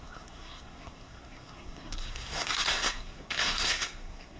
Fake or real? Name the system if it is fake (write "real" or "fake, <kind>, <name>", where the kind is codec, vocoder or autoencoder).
fake, codec, SNAC